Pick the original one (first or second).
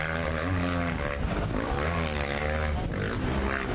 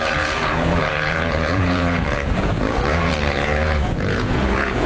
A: first